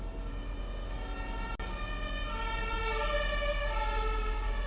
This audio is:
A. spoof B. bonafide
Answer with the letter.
B